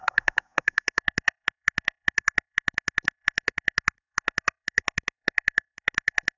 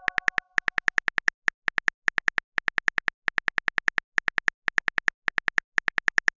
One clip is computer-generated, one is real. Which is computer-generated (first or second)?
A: first